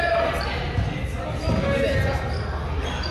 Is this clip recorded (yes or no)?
yes